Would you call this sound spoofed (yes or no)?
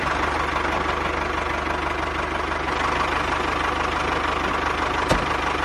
no